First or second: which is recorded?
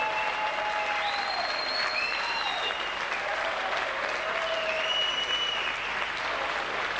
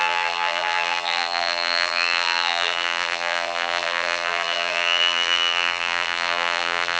first